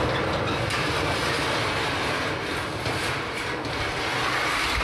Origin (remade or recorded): recorded